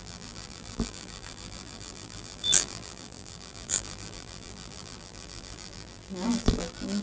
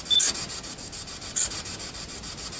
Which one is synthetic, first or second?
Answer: first